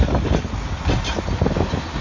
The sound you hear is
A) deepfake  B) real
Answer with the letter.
B